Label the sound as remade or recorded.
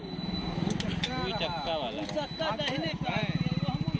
recorded